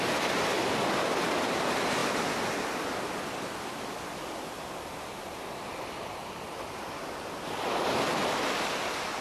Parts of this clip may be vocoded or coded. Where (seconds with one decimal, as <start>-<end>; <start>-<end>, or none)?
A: none